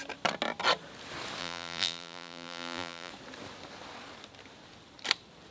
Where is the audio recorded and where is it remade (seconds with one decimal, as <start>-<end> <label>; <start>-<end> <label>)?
0.0-1.4 recorded; 1.4-3.1 remade; 3.1-5.5 recorded